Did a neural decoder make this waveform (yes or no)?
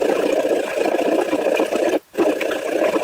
no